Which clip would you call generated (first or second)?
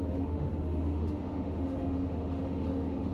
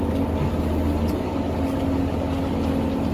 first